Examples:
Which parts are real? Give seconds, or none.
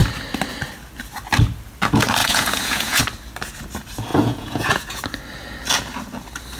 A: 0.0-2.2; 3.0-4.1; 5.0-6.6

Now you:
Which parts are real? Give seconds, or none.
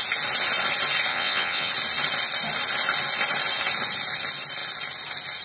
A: 0.0-1.1; 1.7-5.4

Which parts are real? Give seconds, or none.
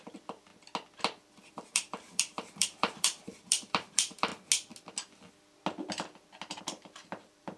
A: 0.5-1.5; 4.3-6.6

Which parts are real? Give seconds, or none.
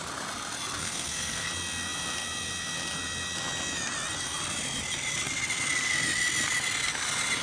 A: 0.0-0.8; 1.5-7.4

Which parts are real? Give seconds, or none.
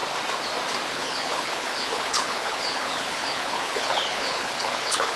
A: 0.0-0.9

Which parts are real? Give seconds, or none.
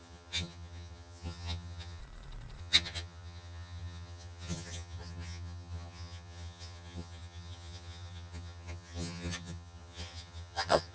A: 2.0-2.6